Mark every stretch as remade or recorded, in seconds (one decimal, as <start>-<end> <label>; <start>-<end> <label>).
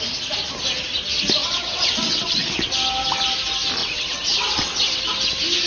0.0-1.4 recorded; 1.4-2.7 remade; 2.7-3.8 recorded; 3.8-5.0 remade; 5.0-5.7 recorded